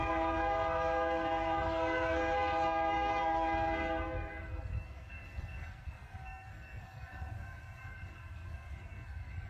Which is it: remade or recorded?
remade